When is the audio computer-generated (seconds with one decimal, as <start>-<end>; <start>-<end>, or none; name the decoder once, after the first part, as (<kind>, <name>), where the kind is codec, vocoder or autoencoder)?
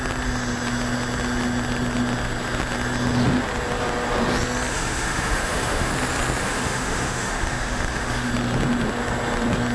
4.7-5.9 (autoencoder, DAC-VAE); 6.4-8.3